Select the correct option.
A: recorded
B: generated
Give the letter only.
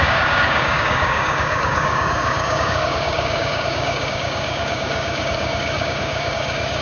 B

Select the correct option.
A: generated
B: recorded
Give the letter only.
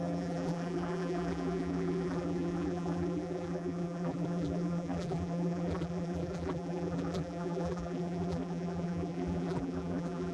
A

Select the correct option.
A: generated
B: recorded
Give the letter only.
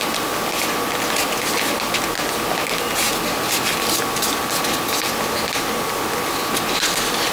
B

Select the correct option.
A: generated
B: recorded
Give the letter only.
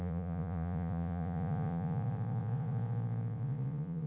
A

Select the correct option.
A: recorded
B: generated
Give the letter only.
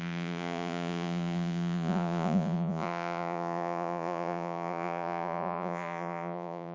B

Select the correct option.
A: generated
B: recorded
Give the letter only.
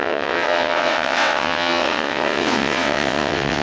A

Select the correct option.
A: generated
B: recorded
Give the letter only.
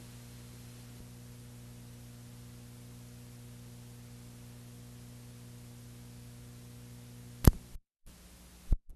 B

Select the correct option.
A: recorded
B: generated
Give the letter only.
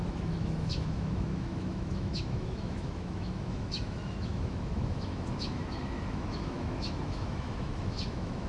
B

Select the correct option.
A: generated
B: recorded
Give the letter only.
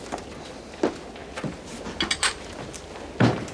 B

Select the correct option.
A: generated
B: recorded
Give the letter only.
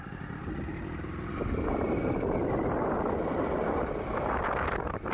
B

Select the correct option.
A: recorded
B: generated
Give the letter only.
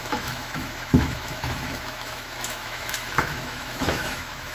B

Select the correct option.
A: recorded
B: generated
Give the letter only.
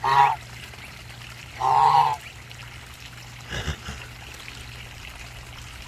A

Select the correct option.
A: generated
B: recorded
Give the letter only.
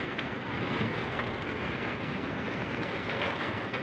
A